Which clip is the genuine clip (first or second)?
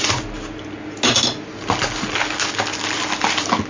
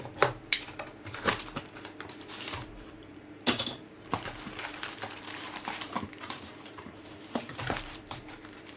first